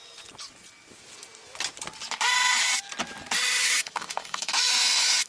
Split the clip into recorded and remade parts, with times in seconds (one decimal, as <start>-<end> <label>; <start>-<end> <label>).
0.0-3.6 recorded; 3.6-5.3 remade